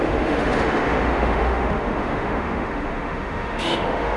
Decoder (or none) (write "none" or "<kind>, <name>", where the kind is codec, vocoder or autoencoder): autoencoder, DAC-VAE